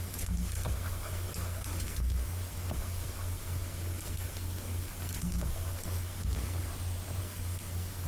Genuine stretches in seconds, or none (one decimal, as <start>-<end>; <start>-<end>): 6.7-7.2